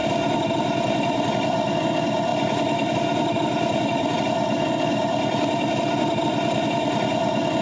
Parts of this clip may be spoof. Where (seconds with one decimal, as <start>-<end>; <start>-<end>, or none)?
0.0-1.7; 2.3-4.2